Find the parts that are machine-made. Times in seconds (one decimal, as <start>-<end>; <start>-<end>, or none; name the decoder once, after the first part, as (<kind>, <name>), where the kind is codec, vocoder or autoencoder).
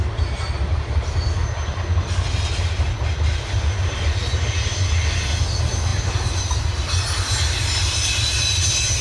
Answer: none